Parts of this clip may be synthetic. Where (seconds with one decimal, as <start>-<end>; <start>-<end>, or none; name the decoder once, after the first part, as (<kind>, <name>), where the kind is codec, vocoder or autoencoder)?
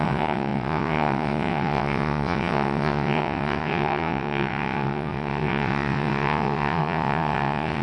0.0-7.8 (vocoder, WaveNeXt)